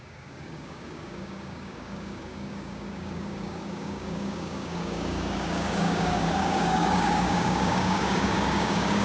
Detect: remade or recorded remade